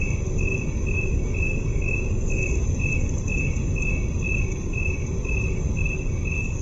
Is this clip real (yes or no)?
yes